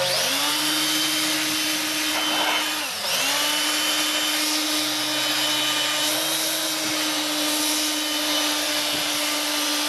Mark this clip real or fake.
real